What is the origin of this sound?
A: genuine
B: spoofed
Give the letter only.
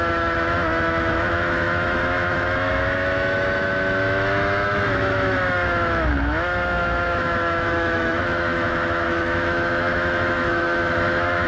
B